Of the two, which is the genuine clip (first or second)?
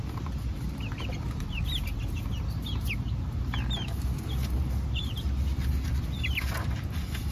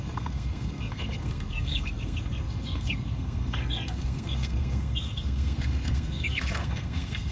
first